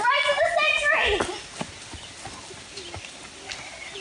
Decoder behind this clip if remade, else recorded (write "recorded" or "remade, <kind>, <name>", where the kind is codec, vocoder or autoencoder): recorded